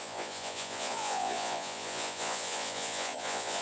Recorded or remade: remade